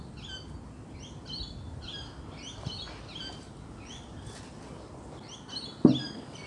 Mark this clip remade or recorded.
recorded